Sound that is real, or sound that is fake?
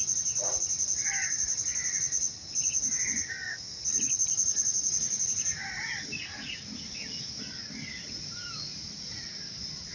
real